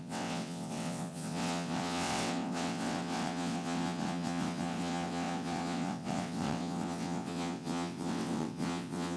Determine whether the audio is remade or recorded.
remade